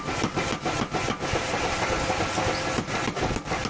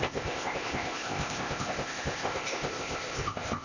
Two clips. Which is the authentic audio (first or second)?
first